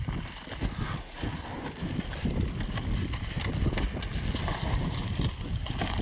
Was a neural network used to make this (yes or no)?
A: no